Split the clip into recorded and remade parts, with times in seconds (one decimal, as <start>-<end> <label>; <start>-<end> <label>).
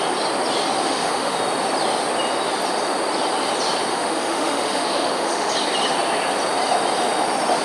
0.0-0.8 recorded; 0.8-1.4 remade; 1.4-3.9 recorded; 3.9-5.5 remade; 5.5-7.6 recorded